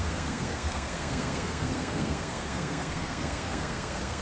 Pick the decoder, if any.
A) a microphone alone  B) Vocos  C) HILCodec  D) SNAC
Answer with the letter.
D